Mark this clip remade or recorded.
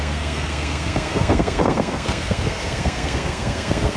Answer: remade